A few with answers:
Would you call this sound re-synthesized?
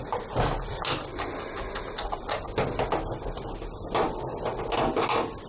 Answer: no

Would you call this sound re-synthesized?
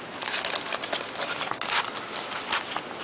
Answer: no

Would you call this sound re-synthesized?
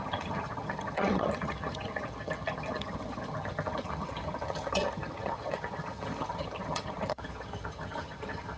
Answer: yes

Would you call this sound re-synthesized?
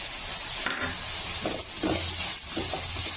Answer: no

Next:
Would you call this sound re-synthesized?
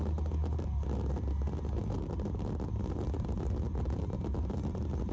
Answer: no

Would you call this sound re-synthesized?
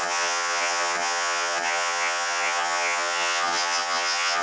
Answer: yes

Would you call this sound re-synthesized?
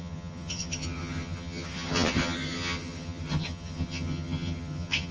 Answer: yes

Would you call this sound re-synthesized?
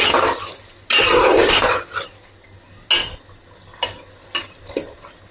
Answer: no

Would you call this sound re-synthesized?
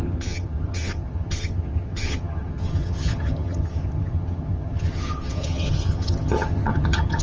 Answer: yes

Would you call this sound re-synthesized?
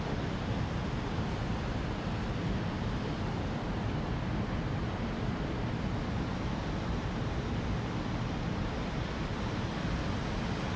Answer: no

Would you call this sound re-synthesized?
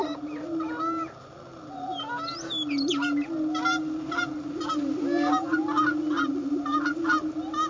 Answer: no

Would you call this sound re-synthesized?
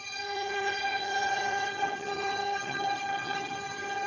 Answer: yes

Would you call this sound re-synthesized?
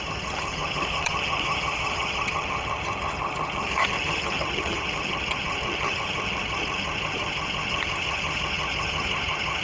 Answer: yes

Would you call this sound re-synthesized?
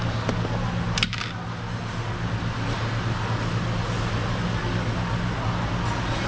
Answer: no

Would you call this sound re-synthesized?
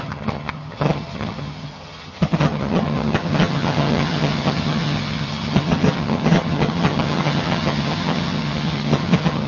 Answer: yes